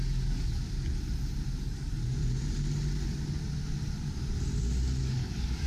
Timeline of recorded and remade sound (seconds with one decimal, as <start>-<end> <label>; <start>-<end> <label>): 0.0-0.6 remade; 0.6-1.6 recorded; 1.6-2.0 remade; 2.0-5.0 recorded; 5.0-5.7 remade